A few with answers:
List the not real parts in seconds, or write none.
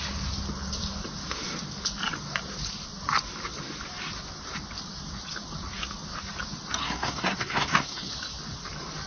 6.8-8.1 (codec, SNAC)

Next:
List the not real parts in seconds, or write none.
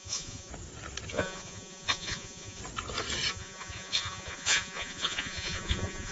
0.0-0.5 (vocoder, Vocos); 1.1-2.6; 3.3-6.1